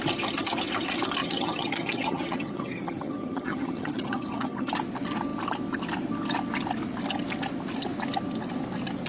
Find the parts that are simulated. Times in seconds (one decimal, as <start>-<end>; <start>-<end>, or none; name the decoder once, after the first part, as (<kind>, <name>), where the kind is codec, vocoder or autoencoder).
1.2-4.7 (vocoder, HiFi-GAN)